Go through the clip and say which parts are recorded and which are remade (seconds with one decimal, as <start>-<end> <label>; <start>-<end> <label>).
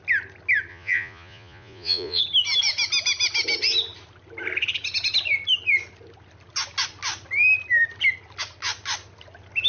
0.0-0.7 recorded; 0.7-2.2 remade; 2.2-9.7 recorded